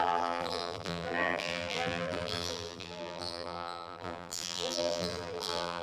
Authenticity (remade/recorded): remade